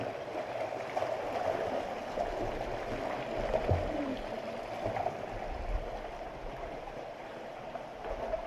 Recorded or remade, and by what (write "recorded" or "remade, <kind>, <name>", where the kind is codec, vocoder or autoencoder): recorded